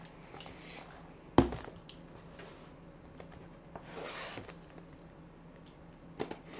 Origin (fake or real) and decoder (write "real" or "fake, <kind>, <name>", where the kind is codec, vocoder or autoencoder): real